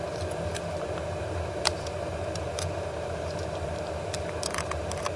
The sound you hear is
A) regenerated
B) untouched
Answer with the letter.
A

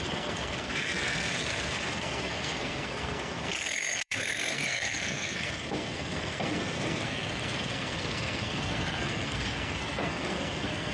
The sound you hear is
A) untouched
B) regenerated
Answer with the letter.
B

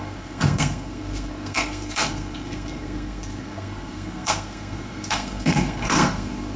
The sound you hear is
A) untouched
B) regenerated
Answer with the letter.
B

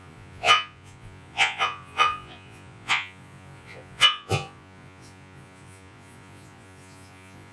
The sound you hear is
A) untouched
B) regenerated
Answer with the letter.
B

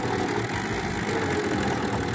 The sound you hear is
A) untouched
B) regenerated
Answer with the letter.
A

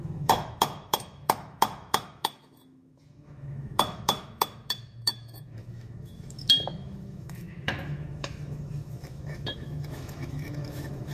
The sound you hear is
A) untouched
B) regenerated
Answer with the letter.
B